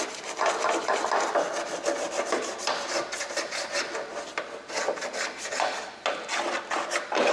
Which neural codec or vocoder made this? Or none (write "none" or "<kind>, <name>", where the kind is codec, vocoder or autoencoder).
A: none